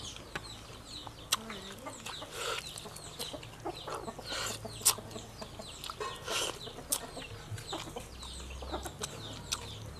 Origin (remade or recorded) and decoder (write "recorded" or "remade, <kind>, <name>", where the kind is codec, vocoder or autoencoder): recorded